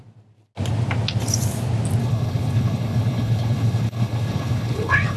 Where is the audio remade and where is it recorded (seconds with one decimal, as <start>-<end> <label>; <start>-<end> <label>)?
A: 0.0-2.0 recorded; 2.0-5.2 remade